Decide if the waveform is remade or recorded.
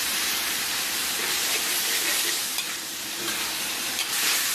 remade